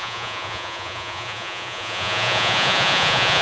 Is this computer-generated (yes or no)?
yes